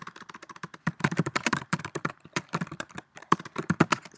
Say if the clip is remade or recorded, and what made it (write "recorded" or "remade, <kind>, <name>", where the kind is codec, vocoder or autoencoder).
remade, vocoder, BigVGAN v2